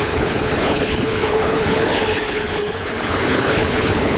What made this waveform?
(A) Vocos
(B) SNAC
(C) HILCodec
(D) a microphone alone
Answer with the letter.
C